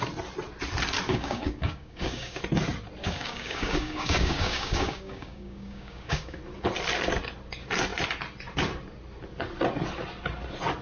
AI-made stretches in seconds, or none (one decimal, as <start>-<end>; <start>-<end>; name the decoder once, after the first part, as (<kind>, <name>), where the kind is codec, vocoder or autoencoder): 1.1-2.4 (codec, DAC); 3.0-6.4